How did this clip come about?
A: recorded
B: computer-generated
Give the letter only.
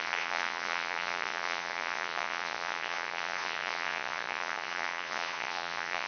B